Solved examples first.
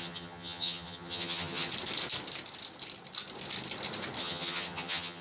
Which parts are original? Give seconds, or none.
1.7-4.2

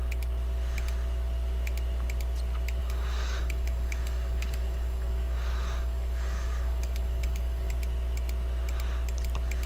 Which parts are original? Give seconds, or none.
0.0-2.8; 7.7-9.7

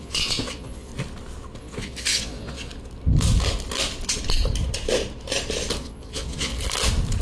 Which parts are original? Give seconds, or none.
0.9-1.6; 2.7-5.8; 6.5-7.2

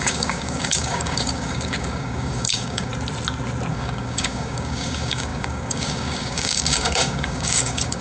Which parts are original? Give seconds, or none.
2.9-3.7

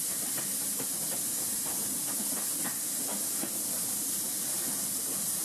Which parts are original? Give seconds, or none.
0.0-5.4